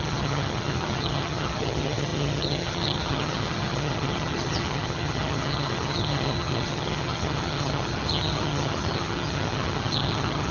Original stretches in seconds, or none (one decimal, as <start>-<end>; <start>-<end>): none